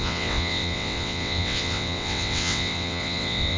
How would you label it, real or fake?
fake